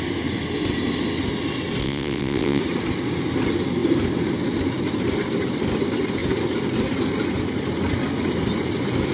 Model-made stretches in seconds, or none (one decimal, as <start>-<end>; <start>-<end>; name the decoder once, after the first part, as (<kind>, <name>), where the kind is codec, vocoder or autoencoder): 1.8-2.6 (vocoder, WaveNeXt)